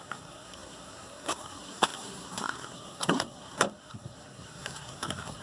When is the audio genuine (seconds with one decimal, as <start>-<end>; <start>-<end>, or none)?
none